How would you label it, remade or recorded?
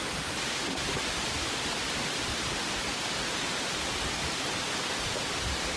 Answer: remade